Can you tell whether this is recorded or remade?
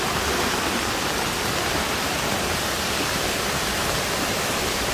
recorded